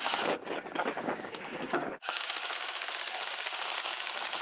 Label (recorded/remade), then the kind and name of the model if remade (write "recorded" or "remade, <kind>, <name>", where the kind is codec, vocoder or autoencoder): remade, codec, DAC